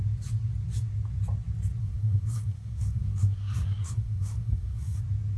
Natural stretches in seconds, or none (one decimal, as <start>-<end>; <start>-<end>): 0.0-1.8; 5.0-5.4